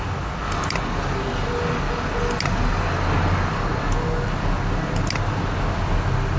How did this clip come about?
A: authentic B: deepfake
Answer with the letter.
A